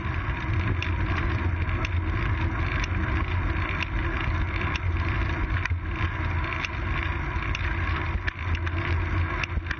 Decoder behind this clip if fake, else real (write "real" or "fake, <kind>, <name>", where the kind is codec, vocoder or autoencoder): real